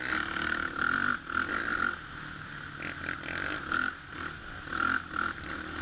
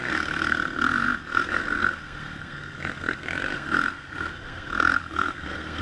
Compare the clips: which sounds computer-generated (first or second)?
second